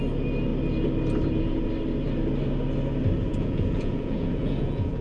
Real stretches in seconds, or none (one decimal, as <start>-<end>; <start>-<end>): 0.0-3.3